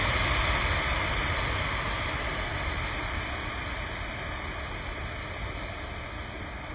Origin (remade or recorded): recorded